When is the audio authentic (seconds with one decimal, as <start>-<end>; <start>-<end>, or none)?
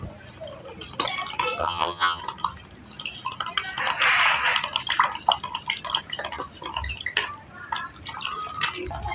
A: 0.0-1.6; 2.2-9.1